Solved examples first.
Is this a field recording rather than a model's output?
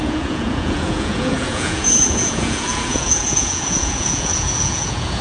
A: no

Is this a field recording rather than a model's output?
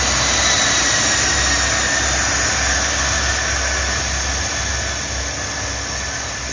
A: yes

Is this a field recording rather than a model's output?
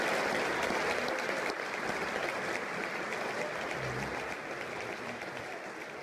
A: yes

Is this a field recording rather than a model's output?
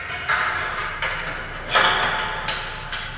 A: yes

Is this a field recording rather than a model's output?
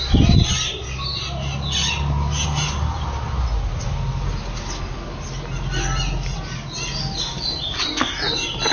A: yes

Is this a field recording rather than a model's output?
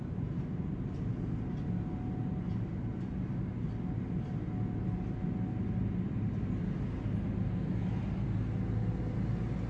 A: yes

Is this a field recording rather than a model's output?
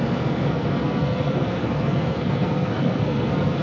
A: no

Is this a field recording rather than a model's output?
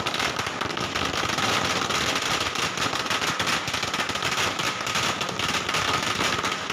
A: no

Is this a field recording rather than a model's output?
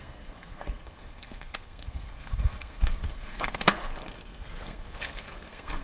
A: no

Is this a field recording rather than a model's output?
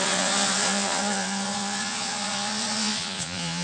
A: no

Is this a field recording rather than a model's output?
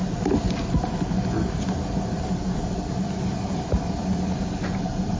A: yes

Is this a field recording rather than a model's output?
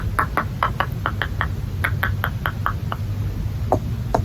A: yes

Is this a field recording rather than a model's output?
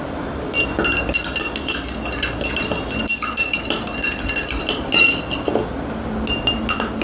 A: yes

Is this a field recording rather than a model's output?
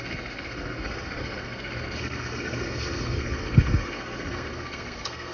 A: no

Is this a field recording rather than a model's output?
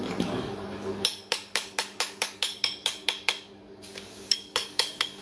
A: no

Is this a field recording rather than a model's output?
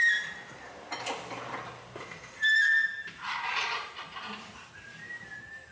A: no